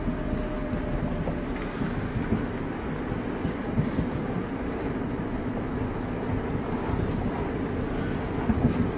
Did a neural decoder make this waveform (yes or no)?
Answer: no